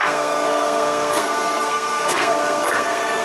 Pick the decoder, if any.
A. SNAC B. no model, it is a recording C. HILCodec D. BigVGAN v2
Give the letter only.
A